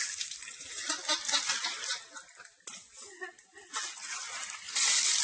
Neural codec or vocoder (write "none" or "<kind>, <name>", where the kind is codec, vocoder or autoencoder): none